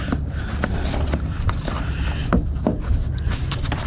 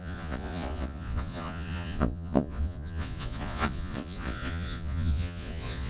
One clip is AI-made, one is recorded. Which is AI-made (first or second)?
second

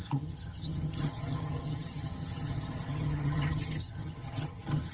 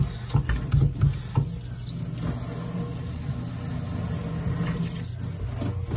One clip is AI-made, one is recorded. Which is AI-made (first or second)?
first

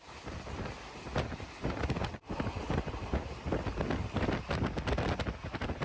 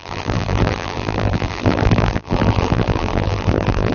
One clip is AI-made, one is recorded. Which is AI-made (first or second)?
second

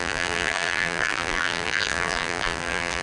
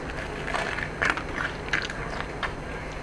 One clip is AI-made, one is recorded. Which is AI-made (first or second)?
first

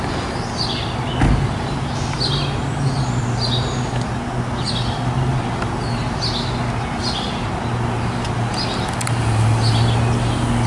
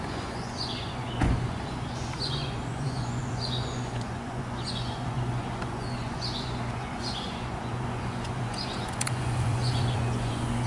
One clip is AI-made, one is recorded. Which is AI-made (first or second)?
second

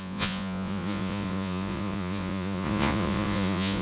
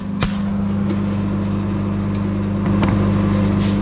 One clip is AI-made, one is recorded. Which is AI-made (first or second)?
first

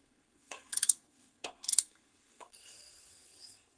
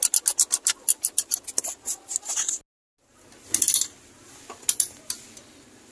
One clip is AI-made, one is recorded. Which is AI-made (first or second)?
first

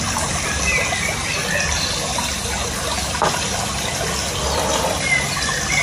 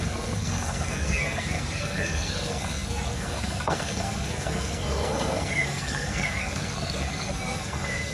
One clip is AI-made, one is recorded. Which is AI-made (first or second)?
second